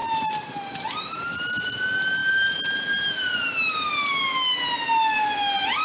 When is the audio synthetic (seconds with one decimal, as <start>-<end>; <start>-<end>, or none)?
none